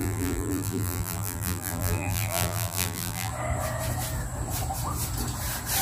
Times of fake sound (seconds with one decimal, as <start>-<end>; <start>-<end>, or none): 0.0-3.3